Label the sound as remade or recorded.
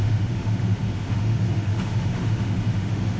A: remade